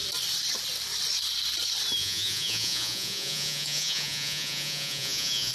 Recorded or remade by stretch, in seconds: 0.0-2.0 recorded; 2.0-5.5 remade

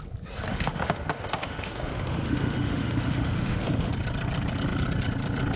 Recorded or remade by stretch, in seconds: 0.0-0.5 recorded; 0.5-3.9 remade; 3.9-5.6 recorded